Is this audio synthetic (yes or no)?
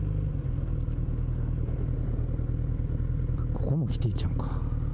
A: no